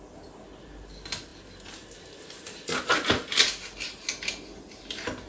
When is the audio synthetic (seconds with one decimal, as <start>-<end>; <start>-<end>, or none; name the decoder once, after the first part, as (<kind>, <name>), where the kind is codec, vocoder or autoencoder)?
none